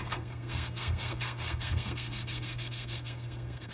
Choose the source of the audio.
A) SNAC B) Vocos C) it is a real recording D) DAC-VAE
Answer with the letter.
A